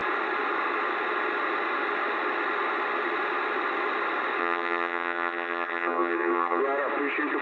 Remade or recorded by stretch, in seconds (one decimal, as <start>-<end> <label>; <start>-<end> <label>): 0.0-4.4 recorded; 4.4-6.6 remade; 6.6-7.4 recorded